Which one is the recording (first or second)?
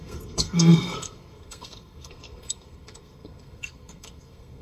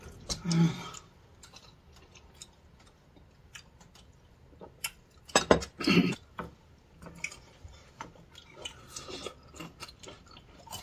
second